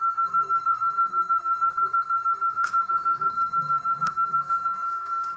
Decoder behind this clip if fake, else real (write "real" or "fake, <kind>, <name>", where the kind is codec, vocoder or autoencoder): fake, codec, SNAC